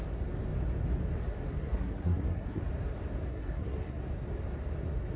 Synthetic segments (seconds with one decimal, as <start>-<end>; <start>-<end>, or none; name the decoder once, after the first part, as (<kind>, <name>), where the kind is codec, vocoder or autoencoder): 1.6-2.6 (codec, SNAC); 3.3-4.0